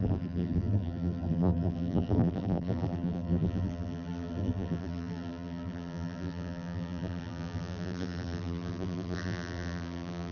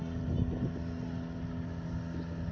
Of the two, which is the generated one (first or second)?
first